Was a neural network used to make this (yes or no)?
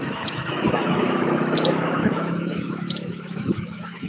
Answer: yes